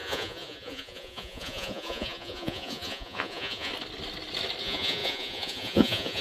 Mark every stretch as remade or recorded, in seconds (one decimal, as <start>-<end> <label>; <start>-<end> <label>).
0.0-3.7 remade; 3.7-4.6 recorded; 4.6-6.2 remade